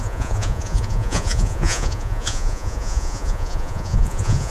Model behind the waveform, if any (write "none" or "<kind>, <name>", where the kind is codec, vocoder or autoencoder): vocoder, Vocos